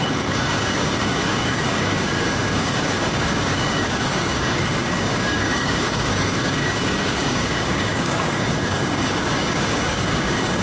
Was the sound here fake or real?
fake